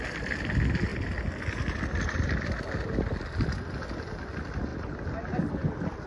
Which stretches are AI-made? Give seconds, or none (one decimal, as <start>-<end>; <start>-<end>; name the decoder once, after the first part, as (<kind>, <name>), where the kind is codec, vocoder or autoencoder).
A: none